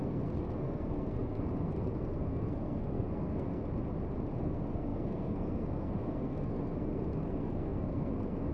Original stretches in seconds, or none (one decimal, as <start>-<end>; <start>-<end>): 3.6-4.4